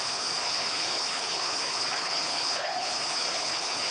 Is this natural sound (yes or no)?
no